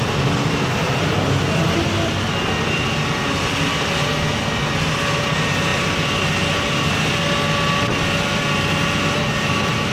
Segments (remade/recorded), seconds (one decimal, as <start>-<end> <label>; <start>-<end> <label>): 0.0-9.9 recorded